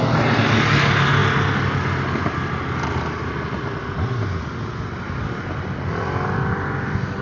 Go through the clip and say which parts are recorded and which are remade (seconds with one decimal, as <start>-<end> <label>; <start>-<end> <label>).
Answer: 0.0-7.2 recorded